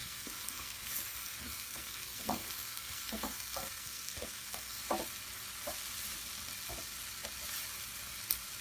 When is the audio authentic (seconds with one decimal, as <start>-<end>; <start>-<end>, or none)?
4.8-8.6

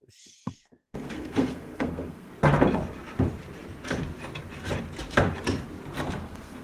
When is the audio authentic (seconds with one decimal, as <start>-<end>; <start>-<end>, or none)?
2.3-6.1

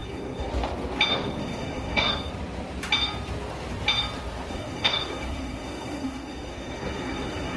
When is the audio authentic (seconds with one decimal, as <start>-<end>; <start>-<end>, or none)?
0.5-1.1; 2.3-4.5